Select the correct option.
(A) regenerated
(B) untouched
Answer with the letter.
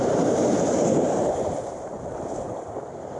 A